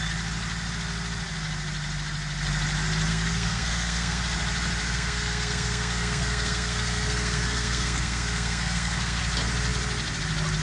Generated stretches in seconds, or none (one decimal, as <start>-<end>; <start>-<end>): 3.1-4.2; 4.8-9.2